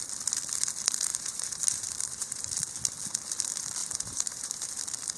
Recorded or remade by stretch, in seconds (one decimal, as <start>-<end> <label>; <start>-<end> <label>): 0.0-1.1 recorded; 1.1-2.4 remade; 2.4-3.8 recorded; 3.8-4.8 remade; 4.8-5.2 recorded